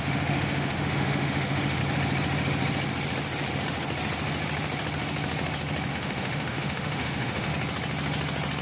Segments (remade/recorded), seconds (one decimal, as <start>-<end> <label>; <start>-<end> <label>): 0.0-1.8 remade; 1.8-5.9 recorded; 5.9-7.5 remade; 7.5-8.6 recorded